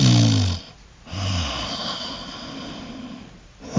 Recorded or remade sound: recorded